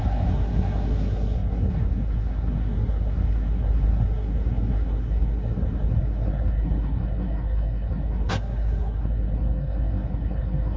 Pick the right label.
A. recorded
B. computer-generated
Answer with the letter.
B